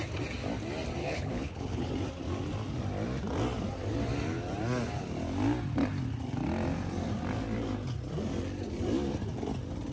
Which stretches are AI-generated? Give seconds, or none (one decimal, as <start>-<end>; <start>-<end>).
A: 1.0-1.9